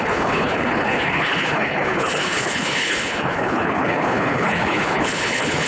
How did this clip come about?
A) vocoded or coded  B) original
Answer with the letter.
A